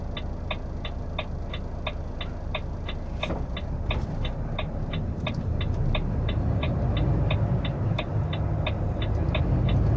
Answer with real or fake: real